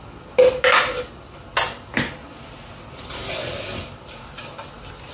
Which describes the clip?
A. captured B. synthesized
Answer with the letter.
A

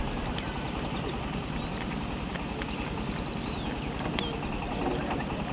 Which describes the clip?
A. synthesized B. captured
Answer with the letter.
B